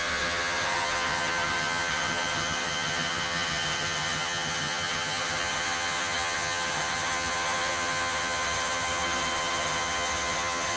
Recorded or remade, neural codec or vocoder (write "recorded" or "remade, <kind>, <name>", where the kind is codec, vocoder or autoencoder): remade, vocoder, HiFi-GAN